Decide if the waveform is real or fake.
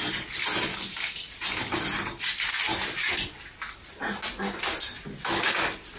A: real